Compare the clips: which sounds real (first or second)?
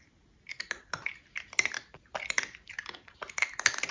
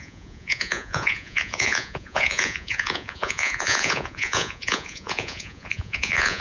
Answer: first